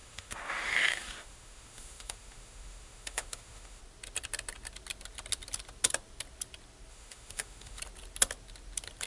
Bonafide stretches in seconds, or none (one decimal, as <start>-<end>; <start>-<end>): 3.8-6.9; 7.8-9.1